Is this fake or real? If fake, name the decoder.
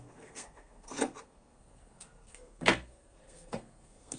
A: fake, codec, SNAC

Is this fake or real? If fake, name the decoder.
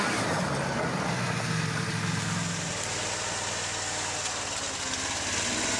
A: real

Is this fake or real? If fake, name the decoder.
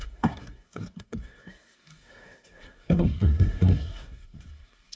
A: fake, codec, SNAC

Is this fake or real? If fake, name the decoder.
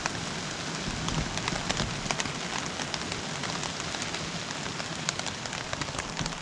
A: real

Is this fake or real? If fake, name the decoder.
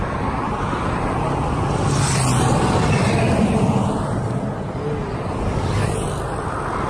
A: real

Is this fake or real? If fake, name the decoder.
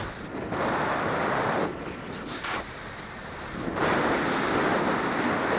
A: real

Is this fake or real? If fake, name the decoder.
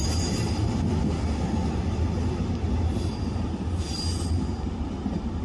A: real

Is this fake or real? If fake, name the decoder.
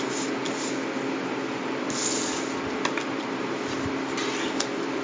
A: real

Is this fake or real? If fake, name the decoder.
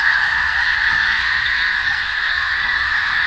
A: fake, codec, SNAC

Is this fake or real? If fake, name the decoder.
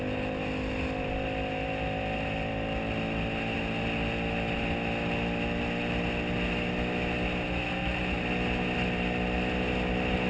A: real